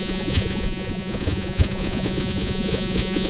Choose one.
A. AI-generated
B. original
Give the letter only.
A